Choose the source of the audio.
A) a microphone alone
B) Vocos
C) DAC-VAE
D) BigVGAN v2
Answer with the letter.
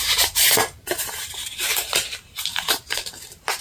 D